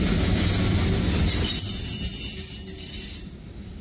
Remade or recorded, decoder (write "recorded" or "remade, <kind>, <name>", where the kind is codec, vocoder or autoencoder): recorded